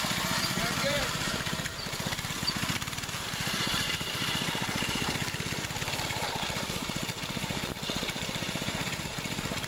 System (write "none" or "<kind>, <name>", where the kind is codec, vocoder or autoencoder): vocoder, BigVGAN v2